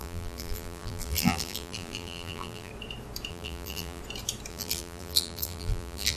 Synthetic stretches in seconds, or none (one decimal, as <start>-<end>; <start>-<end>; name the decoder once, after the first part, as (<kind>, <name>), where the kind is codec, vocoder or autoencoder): 0.0-2.7 (vocoder, BigVGAN v2); 3.3-4.0; 4.5-6.2